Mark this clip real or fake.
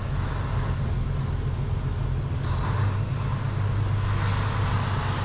real